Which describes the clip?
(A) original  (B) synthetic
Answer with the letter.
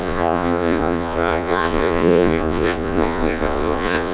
B